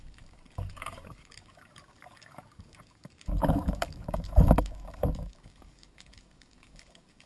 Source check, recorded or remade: remade